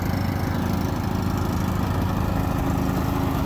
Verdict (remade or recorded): recorded